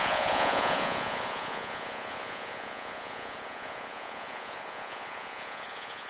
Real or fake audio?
fake